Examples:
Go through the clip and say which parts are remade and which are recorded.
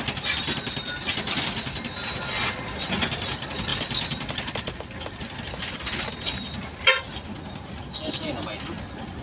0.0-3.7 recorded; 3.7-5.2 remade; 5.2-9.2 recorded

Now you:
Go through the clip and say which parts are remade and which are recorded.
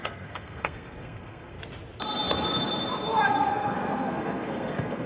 0.0-1.6 remade; 1.6-3.5 recorded; 3.5-5.1 remade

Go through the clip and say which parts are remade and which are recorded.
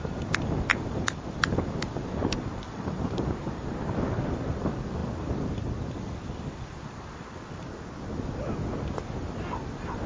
0.0-0.7 recorded; 0.7-4.1 remade; 4.1-10.1 recorded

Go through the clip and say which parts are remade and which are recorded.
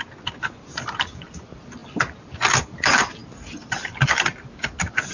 0.0-5.1 recorded